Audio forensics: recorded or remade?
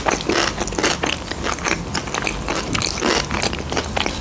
recorded